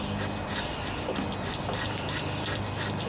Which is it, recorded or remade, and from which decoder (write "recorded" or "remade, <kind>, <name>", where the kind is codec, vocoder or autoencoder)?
recorded